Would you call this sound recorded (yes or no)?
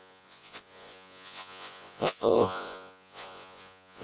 no